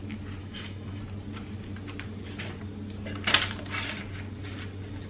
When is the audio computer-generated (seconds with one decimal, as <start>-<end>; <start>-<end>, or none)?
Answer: 0.4-1.0